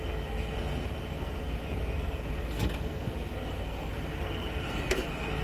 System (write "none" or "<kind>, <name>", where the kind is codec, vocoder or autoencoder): codec, SNAC